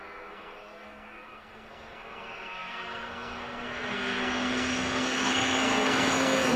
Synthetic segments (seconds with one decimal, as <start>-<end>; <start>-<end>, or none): 0.0-6.6